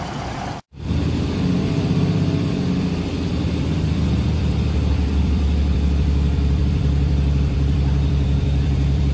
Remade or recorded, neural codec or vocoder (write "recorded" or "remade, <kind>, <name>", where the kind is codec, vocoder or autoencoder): remade, vocoder, BigVGAN v2